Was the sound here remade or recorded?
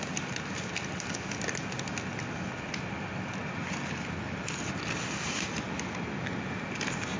recorded